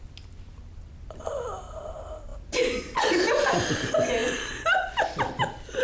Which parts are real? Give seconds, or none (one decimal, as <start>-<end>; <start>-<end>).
0.0-5.8